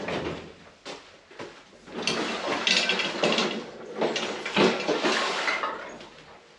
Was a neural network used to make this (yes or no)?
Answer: no